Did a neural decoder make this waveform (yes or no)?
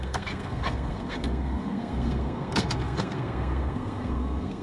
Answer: yes